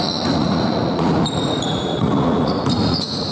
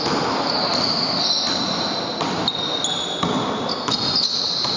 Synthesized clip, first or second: first